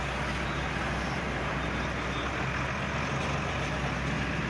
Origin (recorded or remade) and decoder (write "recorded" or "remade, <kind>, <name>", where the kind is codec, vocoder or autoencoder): recorded